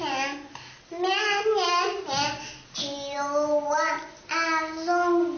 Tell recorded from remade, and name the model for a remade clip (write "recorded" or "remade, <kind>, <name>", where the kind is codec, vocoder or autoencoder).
recorded